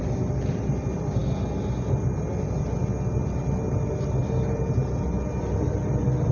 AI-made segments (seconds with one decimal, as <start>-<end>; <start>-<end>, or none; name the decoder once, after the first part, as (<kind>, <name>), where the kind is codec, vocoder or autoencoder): none